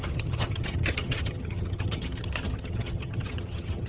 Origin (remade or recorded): remade